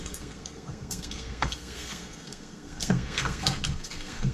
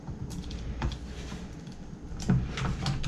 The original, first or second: second